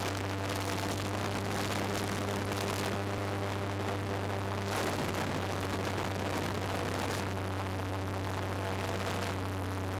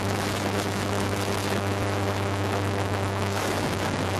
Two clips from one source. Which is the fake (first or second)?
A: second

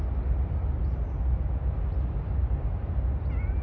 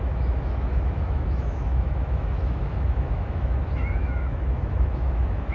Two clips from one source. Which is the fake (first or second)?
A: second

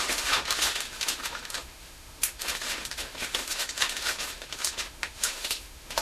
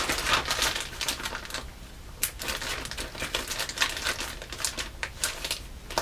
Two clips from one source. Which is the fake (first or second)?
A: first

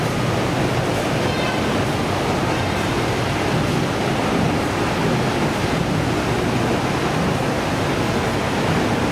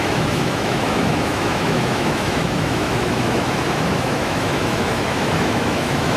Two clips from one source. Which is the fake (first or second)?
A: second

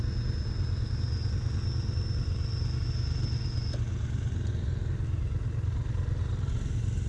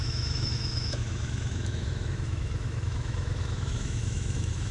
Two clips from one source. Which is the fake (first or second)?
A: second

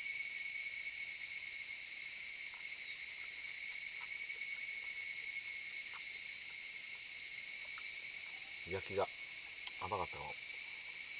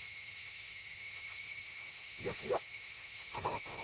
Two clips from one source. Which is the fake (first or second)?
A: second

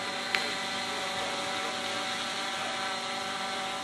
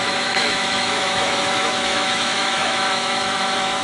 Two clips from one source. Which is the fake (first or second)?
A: second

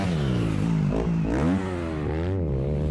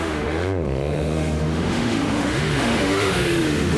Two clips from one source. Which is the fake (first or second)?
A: second